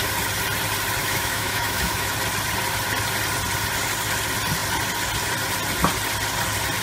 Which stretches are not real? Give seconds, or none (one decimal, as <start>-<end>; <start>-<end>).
1.0-2.1